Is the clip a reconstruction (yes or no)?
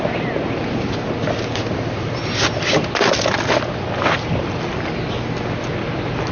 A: no